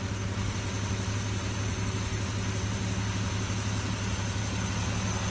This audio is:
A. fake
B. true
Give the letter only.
B